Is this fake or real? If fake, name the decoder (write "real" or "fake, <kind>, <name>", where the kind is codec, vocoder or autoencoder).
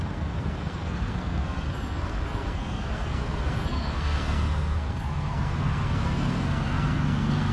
fake, codec, SNAC